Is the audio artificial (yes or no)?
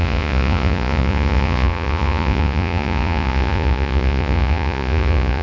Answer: yes